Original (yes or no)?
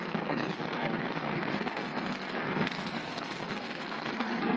no